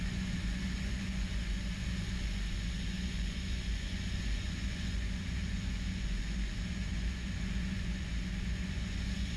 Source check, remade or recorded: remade